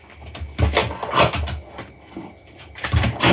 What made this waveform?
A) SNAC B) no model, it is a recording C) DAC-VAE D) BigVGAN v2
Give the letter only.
B